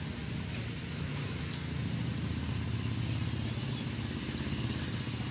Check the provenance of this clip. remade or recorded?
recorded